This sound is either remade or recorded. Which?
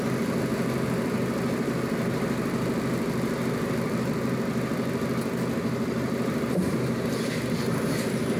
recorded